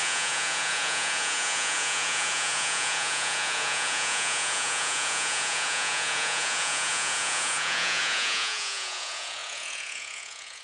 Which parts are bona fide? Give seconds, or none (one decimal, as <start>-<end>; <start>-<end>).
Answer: none